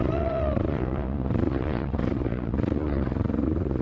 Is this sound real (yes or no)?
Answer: no